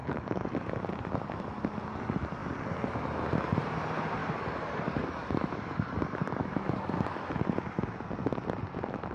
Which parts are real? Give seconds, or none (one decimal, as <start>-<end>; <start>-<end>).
0.8-4.2; 7.4-9.1